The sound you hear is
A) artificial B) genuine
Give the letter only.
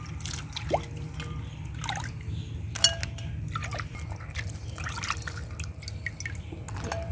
B